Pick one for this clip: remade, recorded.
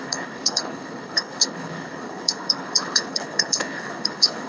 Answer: remade